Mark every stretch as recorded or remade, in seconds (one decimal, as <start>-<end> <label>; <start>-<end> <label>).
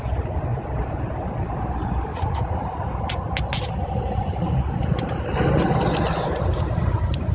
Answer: 0.0-2.1 recorded; 2.1-2.8 remade; 2.8-3.8 recorded; 3.8-4.7 remade; 4.7-7.3 recorded